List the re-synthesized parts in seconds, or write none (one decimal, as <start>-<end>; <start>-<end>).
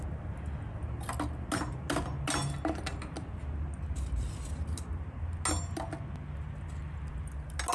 none